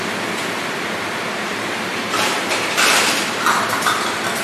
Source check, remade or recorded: remade